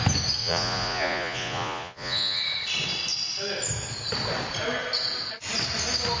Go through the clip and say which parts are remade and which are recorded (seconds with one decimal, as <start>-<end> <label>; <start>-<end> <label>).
0.0-0.4 recorded; 0.4-2.4 remade; 2.4-6.2 recorded